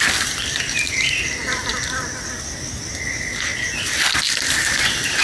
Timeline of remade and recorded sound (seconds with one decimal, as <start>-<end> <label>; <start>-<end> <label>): 0.0-5.2 recorded